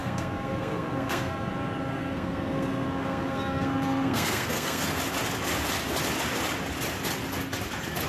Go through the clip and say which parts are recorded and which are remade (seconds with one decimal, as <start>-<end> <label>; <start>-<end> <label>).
0.0-1.5 remade; 1.5-1.9 recorded; 1.9-5.0 remade; 5.0-8.1 recorded